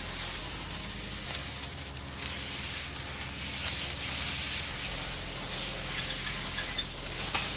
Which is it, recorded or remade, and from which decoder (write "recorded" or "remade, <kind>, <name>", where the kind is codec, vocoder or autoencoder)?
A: recorded